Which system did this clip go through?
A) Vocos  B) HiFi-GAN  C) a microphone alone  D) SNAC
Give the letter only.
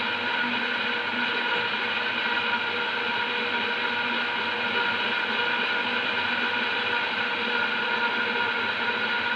C